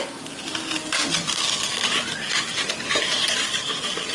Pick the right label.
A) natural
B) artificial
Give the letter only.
A